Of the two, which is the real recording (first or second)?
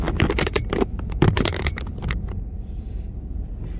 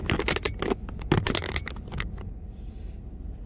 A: second